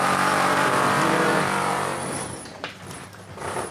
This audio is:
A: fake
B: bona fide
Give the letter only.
A